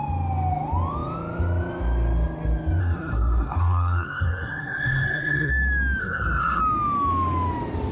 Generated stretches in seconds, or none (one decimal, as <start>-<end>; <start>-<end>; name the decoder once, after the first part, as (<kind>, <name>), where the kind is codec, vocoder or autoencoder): 2.8-5.5 (codec, SNAC); 6.0-6.6